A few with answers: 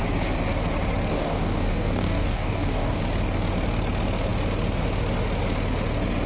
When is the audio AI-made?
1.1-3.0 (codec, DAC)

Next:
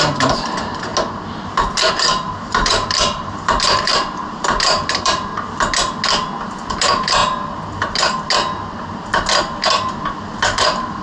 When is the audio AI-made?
0.0-0.9 (vocoder, BigVGAN v2); 1.9-5.3; 6.4-7.2; 10.2-11.0

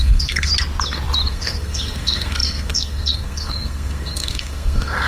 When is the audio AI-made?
0.0-0.5 (codec, SNAC); 1.3-5.1

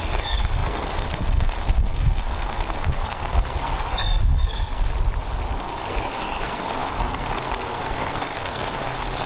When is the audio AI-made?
0.0-4.9 (codec, SNAC); 5.6-9.3